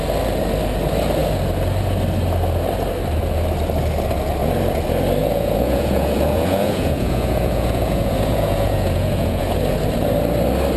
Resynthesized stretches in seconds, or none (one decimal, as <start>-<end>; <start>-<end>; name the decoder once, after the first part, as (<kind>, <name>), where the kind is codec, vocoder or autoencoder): 5.2-9.6 (vocoder, Vocos)